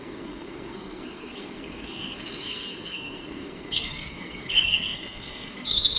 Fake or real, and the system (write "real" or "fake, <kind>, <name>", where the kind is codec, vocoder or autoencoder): fake, codec, SNAC